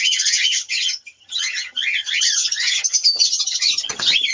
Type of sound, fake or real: fake